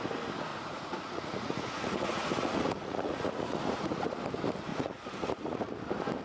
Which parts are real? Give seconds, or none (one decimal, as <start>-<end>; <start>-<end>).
0.0-0.5; 4.2-4.7; 5.7-6.2